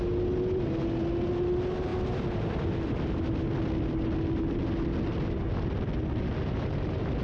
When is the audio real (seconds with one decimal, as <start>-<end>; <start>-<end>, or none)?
0.0-7.2